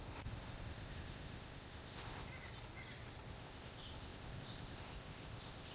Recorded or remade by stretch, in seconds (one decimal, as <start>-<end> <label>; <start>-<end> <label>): 0.0-2.3 remade; 2.3-3.3 recorded; 3.3-5.7 remade